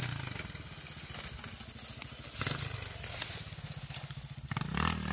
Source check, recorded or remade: recorded